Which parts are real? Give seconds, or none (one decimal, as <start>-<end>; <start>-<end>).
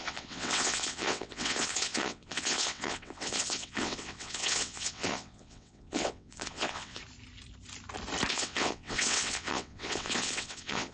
7.0-8.3